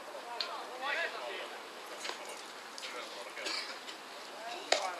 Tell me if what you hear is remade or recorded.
recorded